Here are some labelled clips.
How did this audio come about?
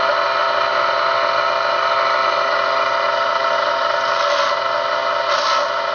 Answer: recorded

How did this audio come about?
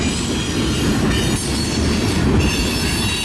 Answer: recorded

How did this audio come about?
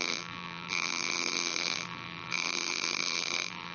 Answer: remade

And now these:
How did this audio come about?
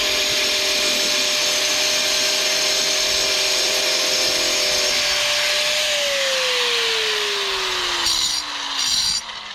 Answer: recorded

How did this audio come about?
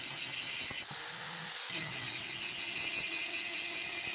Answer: recorded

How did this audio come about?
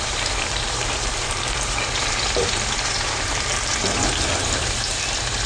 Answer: remade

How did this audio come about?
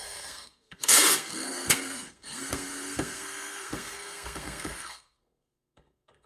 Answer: remade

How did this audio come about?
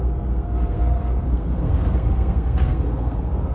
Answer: remade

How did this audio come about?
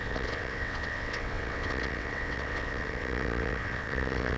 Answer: remade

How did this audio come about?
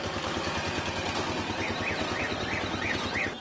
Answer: recorded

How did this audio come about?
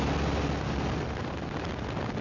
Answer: recorded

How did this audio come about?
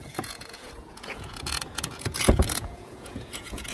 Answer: remade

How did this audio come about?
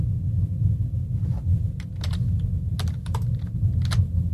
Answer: recorded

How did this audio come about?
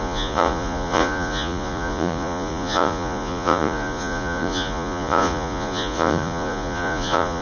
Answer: remade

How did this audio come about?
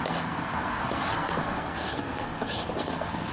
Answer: remade